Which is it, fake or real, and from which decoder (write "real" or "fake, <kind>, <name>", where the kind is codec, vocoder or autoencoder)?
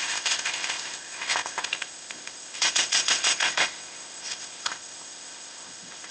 fake, codec, ZipCodec